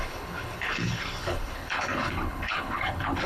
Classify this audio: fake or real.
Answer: fake